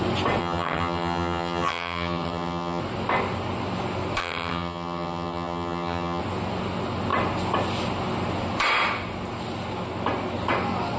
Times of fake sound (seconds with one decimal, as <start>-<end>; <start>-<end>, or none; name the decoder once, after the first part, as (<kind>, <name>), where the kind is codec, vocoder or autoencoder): 0.4-2.8 (vocoder, HiFi-GAN); 4.2-6.2